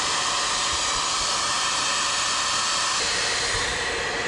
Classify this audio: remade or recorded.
recorded